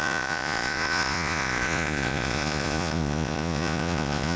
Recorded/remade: remade